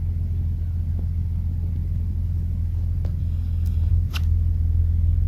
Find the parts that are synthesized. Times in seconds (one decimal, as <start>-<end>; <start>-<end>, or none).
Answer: 3.2-3.9

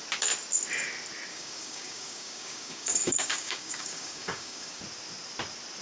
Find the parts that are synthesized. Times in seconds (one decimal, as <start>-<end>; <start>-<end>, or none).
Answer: 1.3-4.8

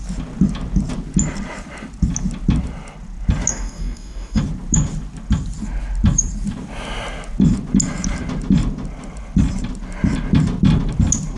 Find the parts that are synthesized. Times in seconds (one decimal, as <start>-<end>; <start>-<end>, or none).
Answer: 3.5-4.4

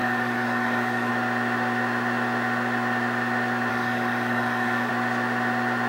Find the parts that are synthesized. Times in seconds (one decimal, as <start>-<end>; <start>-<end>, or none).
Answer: 0.0-1.1; 3.7-4.9

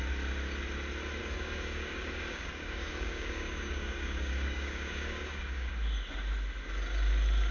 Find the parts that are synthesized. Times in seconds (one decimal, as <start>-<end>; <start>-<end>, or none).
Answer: 1.2-5.7

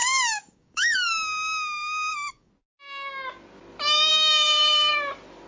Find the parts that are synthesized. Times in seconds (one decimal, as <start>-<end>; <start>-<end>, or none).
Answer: 0.0-2.5; 4.1-4.9

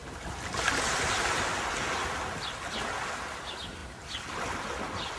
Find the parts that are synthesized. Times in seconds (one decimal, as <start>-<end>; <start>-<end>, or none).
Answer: none